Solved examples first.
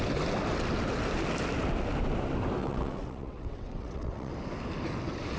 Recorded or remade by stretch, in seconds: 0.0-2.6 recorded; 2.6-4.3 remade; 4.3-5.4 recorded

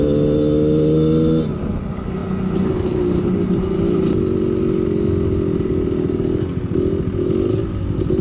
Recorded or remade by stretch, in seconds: 0.0-8.2 recorded